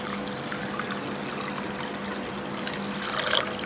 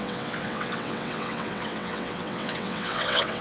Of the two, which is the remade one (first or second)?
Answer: second